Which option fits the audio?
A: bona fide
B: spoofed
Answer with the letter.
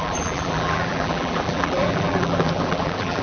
B